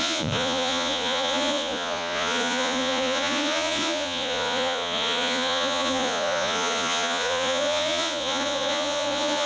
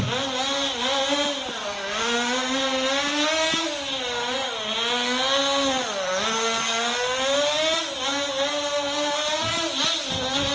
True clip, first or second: second